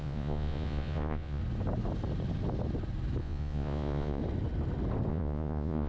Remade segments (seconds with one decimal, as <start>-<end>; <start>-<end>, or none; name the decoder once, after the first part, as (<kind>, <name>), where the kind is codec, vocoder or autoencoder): 0.0-1.4 (vocoder, Vocos); 3.2-4.2; 5.1-5.9